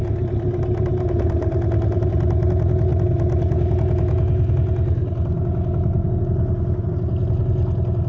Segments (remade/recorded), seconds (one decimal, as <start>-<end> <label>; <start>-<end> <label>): 0.0-8.1 recorded

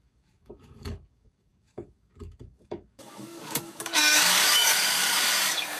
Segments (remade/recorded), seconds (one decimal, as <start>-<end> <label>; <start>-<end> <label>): 0.0-5.8 remade